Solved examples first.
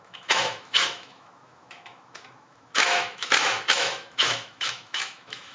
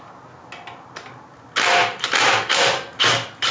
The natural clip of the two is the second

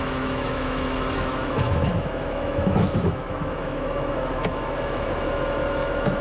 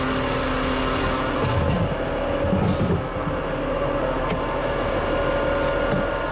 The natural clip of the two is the second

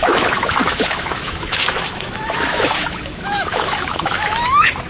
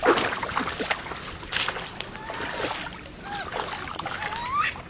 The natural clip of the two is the second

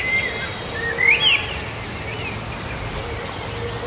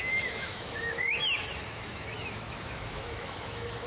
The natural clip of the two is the first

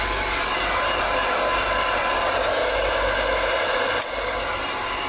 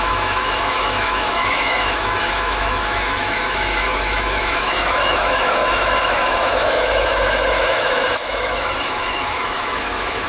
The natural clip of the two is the first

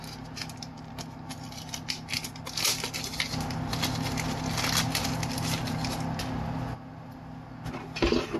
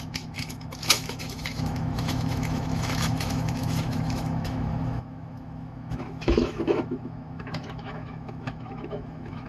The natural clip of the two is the first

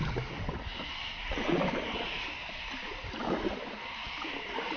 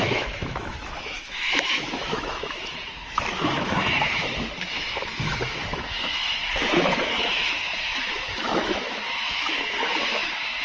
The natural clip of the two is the first